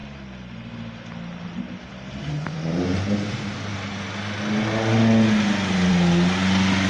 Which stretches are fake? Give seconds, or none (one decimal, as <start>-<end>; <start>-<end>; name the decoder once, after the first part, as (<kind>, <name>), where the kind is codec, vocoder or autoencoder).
none